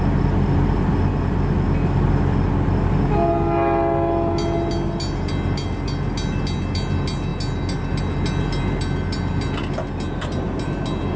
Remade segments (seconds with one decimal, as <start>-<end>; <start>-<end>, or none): none